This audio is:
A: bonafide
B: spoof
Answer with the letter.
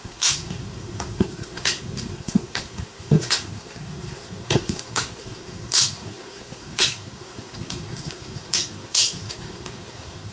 B